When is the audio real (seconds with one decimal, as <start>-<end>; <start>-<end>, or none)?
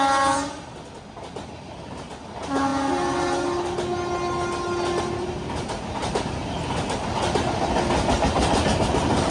0.0-9.3